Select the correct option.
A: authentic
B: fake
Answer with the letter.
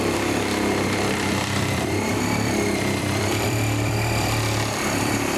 B